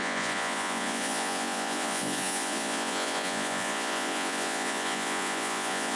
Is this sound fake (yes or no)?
yes